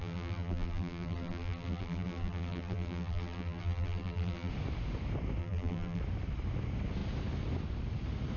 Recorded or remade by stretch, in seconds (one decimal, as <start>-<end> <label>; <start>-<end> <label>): 0.0-4.5 remade; 4.5-5.4 recorded; 5.4-6.0 remade; 6.0-8.4 recorded